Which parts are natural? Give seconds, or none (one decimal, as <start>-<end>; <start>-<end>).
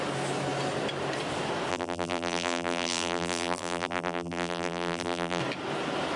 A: 0.0-1.7; 5.4-6.2